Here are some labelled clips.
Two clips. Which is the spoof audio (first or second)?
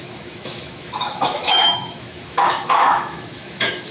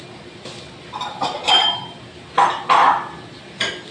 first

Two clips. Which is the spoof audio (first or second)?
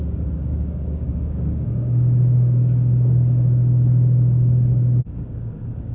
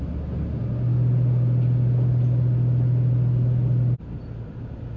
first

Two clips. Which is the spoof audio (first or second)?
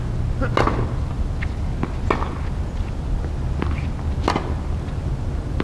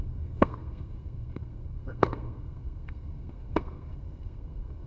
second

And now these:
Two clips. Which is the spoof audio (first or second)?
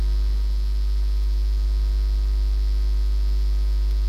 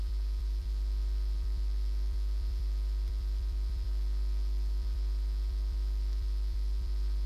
second